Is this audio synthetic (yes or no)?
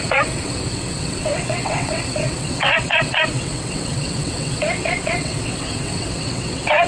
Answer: yes